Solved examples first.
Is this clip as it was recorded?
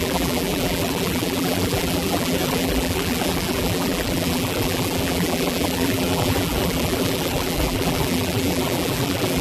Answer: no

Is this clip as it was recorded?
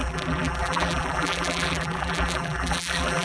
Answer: no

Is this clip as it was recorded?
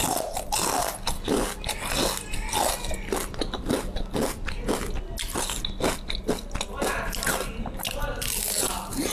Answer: yes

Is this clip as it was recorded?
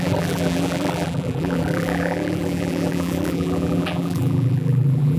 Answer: no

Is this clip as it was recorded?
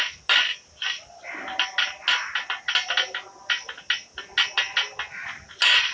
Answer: yes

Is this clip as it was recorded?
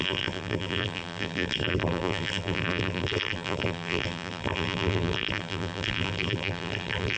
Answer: no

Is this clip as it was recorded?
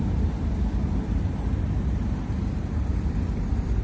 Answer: no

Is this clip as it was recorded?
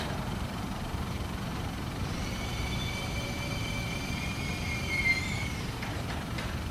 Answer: no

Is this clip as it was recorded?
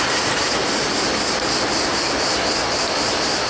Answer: yes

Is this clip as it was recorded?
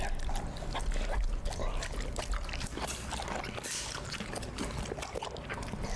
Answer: yes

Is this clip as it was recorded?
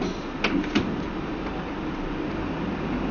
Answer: yes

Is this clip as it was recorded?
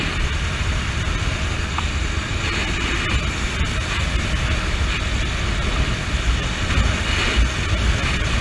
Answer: yes